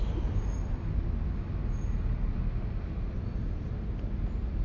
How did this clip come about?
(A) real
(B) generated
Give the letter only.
A